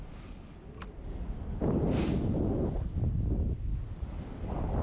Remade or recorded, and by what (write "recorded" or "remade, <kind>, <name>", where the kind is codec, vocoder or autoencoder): recorded